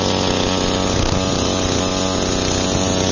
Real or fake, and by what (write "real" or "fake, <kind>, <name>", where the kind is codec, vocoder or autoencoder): real